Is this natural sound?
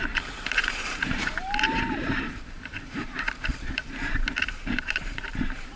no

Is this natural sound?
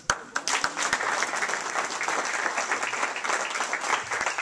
yes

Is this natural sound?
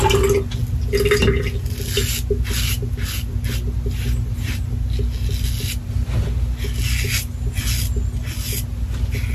yes